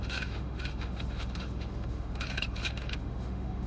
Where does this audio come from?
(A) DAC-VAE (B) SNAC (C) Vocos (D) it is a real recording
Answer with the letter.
A